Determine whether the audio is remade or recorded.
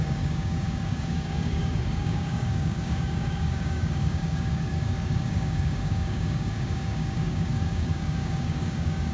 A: remade